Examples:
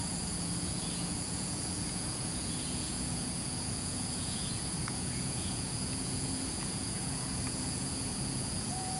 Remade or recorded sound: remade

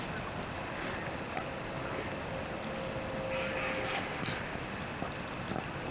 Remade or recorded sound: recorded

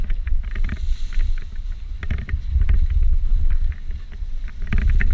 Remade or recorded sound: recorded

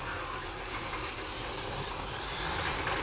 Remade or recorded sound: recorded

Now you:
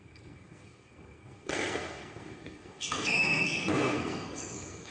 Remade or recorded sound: remade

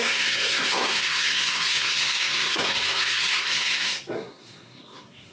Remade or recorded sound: remade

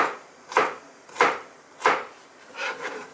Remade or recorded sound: remade